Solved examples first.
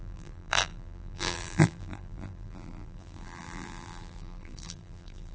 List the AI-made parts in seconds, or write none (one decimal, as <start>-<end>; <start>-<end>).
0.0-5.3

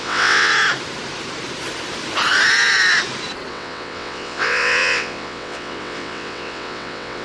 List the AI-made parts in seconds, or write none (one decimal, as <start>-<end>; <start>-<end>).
0.0-0.5; 3.5-7.2

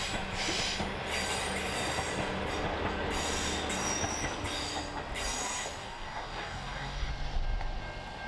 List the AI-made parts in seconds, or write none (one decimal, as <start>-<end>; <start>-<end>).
5.8-7.1

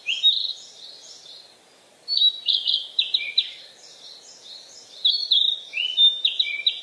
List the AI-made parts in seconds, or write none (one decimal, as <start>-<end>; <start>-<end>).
none

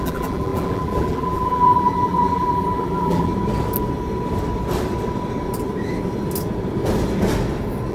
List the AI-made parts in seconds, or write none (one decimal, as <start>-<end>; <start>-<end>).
0.0-3.3

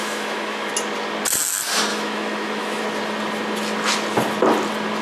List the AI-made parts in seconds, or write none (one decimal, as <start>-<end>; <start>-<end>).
0.0-0.7; 1.9-2.8

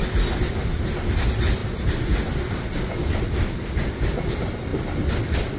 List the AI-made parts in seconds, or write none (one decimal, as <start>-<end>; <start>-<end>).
1.6-2.6